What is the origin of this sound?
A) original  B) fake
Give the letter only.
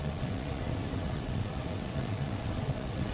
B